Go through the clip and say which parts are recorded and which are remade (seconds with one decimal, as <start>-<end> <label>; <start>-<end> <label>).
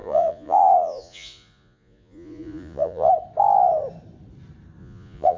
0.0-3.1 remade; 3.1-4.8 recorded; 4.8-5.4 remade